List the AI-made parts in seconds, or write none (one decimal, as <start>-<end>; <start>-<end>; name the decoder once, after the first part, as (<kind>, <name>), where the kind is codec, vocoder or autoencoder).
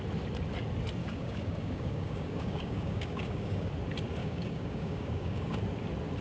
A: 1.0-3.7 (codec, DAC); 4.2-5.6